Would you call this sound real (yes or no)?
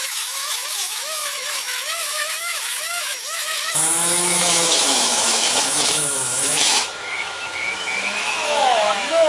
no